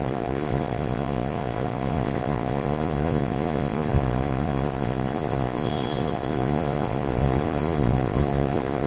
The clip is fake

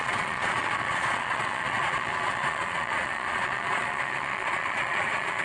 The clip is fake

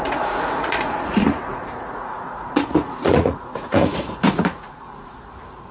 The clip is fake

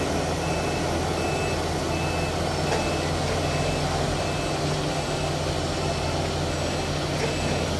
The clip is real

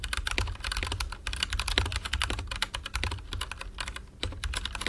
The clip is real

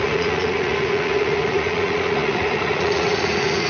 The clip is fake